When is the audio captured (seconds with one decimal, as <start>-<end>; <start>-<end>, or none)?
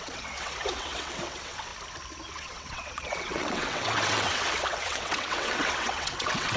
1.7-2.3